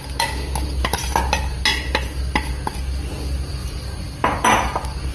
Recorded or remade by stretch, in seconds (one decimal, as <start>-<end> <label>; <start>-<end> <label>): 0.0-3.6 recorded; 3.6-4.4 remade; 4.4-5.1 recorded